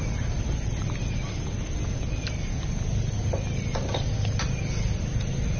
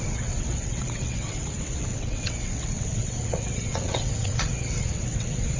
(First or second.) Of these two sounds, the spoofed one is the second